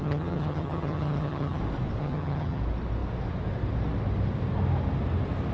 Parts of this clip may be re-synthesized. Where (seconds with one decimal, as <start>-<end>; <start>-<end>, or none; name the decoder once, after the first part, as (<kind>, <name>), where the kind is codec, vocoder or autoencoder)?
0.0-1.6 (vocoder, HiFi-GAN); 2.0-2.6